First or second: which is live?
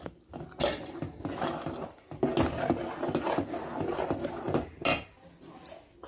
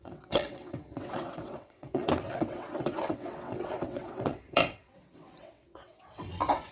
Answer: first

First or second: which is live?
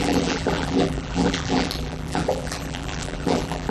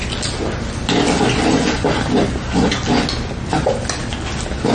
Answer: second